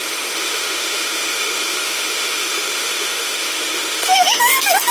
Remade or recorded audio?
remade